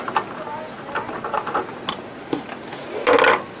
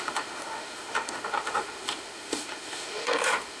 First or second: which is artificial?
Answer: second